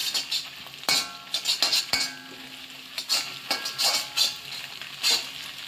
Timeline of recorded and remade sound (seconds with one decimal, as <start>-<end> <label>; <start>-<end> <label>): 0.0-5.7 recorded